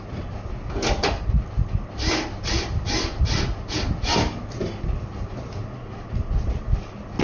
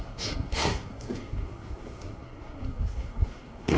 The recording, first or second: first